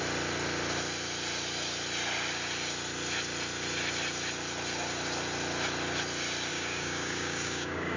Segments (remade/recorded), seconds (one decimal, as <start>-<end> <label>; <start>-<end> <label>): 0.0-6.5 recorded; 6.5-8.0 remade